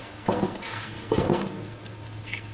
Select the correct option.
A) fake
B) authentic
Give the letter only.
A